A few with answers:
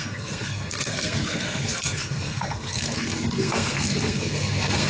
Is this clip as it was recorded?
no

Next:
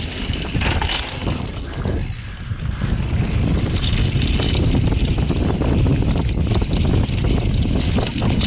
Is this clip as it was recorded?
yes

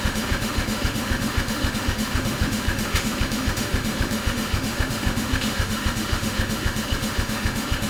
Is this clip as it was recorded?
no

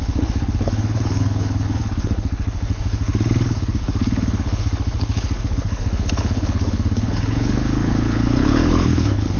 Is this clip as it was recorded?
no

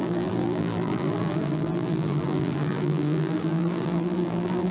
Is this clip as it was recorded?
no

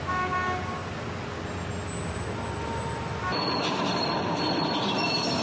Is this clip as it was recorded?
yes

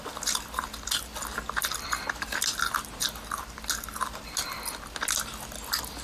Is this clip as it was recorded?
yes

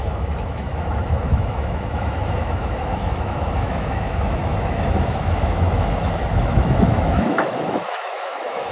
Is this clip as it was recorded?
no